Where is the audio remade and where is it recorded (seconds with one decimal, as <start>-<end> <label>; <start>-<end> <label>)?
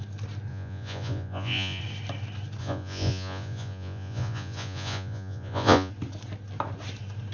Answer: 0.0-0.5 recorded; 0.5-1.8 remade; 1.8-2.6 recorded; 2.6-5.9 remade; 5.9-7.3 recorded